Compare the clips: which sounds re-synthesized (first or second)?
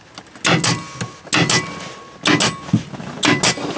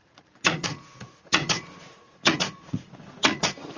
second